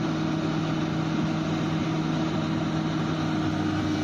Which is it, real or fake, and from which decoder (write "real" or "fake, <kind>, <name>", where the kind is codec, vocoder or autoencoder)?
real